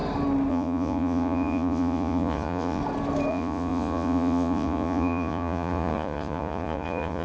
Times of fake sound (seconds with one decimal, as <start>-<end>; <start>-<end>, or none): 0.5-2.8; 3.3-7.2